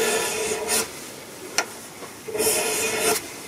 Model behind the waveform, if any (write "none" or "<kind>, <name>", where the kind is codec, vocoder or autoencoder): none